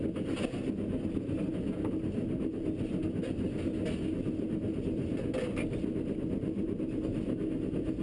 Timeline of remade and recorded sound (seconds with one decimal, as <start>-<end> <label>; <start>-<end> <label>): 0.0-8.0 recorded